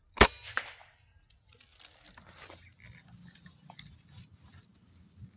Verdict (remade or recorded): recorded